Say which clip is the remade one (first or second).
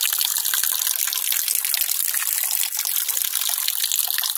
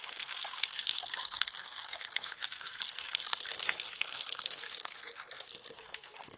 second